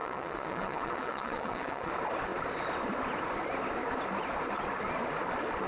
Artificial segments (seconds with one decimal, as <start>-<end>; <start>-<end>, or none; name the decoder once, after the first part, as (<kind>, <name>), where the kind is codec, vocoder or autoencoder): 0.0-1.9 (vocoder, WaveNeXt)

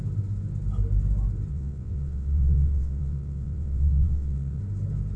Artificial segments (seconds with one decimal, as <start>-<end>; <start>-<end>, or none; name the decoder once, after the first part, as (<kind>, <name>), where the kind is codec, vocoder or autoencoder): 1.5-4.6 (vocoder, WaveNeXt)

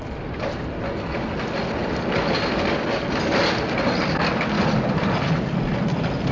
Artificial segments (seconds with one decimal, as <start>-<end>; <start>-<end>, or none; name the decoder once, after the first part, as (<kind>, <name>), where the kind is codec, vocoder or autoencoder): none